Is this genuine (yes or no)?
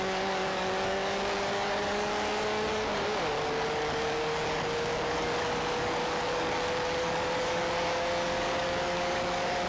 no